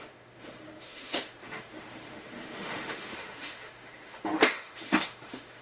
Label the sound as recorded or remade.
remade